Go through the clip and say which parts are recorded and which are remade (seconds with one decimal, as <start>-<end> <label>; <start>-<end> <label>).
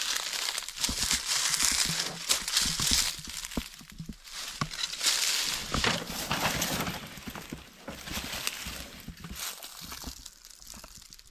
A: 0.0-11.3 recorded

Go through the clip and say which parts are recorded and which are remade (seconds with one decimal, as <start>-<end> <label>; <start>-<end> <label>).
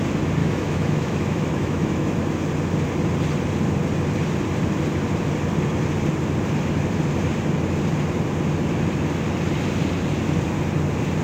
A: 0.0-0.4 recorded; 0.4-2.1 remade; 2.1-11.2 recorded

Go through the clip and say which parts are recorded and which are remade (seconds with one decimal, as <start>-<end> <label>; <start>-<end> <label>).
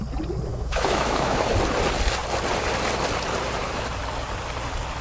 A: 0.0-0.5 recorded; 0.5-1.4 remade; 1.4-5.0 recorded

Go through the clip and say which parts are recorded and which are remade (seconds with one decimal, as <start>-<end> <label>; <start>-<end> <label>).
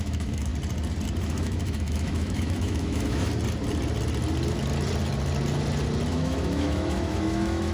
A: 0.0-0.5 remade; 0.5-1.2 recorded; 1.2-3.3 remade; 3.3-6.1 recorded; 6.1-7.7 remade